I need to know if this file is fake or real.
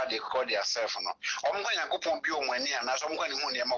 real